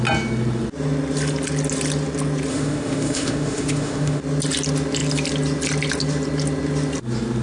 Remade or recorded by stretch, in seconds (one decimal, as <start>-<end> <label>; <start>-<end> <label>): 0.0-2.5 recorded; 2.5-4.2 remade; 4.2-7.4 recorded